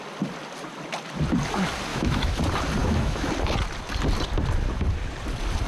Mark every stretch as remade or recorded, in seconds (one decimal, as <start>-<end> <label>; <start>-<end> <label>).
0.0-1.9 recorded; 1.9-2.4 remade; 2.4-2.8 recorded; 2.8-3.3 remade; 3.3-5.7 recorded